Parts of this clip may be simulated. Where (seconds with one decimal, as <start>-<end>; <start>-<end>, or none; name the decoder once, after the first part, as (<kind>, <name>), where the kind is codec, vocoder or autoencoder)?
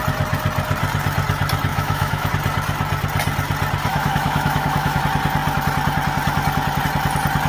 1.7-2.3 (autoencoder, DAC-VAE); 3.9-5.0